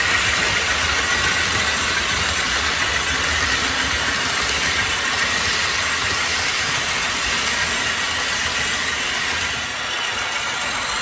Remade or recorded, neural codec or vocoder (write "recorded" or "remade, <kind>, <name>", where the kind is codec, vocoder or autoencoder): recorded